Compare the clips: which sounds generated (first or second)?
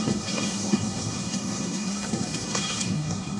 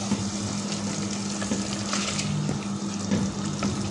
first